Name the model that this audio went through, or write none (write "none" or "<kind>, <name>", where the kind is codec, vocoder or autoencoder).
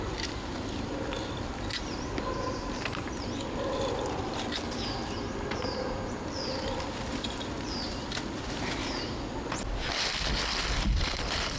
vocoder, BigVGAN v2